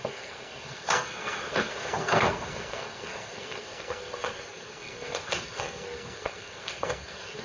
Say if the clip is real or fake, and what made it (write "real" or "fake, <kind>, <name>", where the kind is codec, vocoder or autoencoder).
fake, codec, SNAC